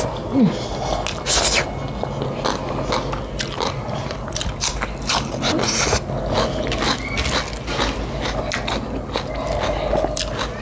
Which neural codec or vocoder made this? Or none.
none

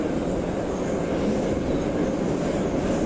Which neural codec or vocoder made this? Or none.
none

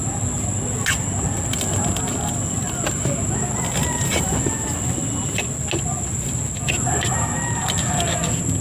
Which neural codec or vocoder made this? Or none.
none